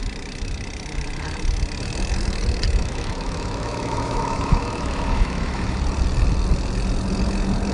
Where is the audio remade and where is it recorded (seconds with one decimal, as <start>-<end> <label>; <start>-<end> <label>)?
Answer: 0.0-2.8 recorded; 2.8-5.8 remade; 5.8-7.7 recorded